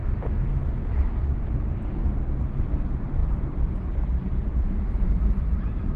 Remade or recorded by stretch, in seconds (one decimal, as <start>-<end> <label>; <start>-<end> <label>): 0.0-6.0 remade